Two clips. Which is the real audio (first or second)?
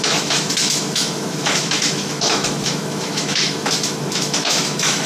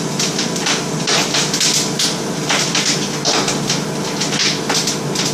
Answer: second